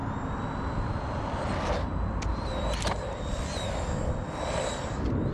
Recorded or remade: recorded